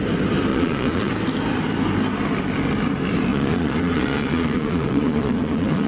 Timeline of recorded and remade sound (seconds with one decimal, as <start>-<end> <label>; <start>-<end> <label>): 0.0-0.5 recorded; 0.5-1.1 remade; 1.1-3.3 recorded; 3.3-5.9 remade